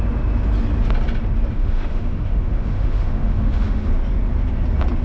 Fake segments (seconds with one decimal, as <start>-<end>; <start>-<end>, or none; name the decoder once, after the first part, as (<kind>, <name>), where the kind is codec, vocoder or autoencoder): 1.6-3.9 (autoencoder, DAC-VAE)

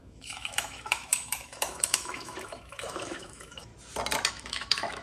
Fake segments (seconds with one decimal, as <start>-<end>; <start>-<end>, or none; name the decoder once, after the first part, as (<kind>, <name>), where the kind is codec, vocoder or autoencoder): 0.0-3.7 (autoencoder, DAC-VAE); 4.3-5.0